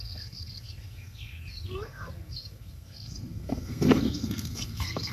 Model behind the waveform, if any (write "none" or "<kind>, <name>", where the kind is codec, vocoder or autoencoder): codec, SNAC